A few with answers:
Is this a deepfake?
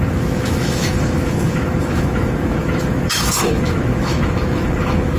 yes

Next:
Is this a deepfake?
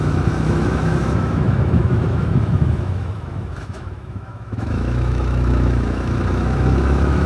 yes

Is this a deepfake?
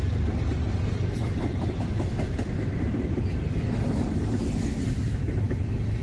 no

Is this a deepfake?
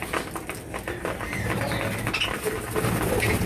no